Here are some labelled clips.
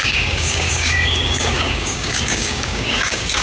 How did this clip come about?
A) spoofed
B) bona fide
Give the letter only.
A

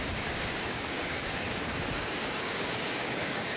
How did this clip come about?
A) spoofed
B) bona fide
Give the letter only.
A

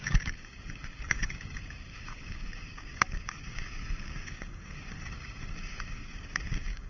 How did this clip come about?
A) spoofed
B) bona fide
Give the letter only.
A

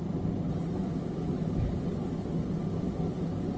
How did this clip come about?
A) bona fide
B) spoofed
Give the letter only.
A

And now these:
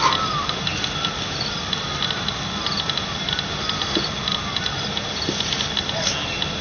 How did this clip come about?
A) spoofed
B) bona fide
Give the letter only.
B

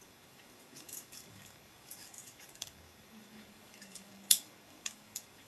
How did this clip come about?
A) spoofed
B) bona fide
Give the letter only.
A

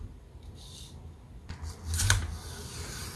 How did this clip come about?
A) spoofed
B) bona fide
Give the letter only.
B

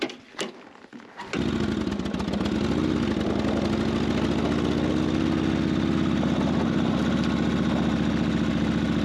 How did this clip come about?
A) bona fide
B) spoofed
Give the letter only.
A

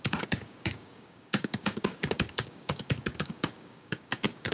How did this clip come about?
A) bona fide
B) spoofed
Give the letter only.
B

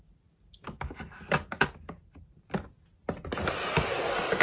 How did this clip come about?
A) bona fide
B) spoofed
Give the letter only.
A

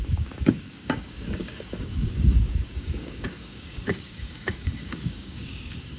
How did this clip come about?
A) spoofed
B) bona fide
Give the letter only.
A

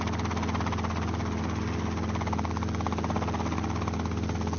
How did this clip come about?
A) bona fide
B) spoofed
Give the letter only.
A